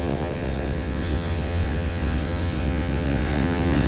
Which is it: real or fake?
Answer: fake